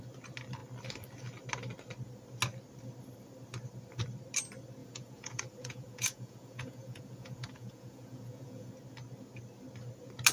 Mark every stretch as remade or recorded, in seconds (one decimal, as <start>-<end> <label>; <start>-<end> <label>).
0.0-4.8 recorded; 4.8-8.7 remade; 8.7-10.3 recorded